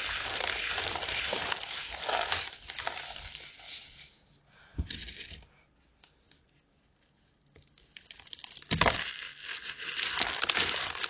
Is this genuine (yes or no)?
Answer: yes